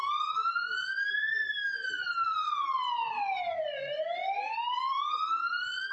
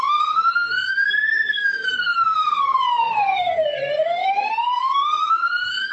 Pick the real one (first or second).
first